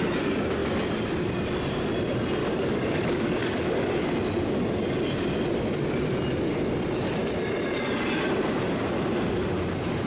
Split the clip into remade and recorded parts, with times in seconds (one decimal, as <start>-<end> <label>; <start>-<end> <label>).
0.0-2.4 recorded; 2.4-4.1 remade; 4.1-10.1 recorded